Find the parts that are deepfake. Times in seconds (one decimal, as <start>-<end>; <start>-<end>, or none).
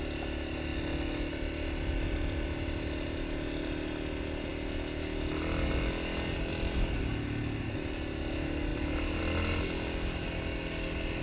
8.7-9.2